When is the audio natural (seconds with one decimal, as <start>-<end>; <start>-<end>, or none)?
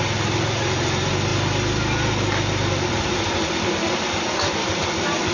0.0-5.3